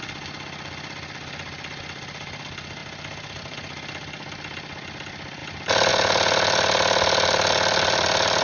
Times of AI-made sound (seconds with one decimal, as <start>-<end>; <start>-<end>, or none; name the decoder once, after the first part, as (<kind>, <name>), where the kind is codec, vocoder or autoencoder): none